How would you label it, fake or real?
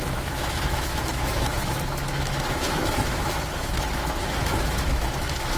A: fake